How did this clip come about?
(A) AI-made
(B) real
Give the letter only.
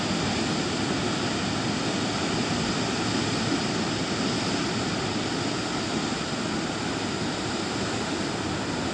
B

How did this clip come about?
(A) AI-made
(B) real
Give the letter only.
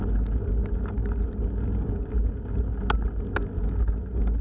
B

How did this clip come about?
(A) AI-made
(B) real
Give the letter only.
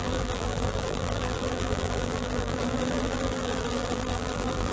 A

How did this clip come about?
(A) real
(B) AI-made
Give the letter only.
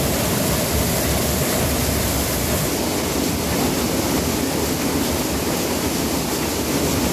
B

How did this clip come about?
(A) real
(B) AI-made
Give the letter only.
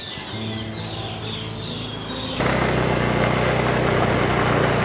A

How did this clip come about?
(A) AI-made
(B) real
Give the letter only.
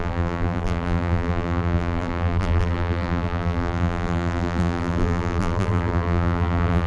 A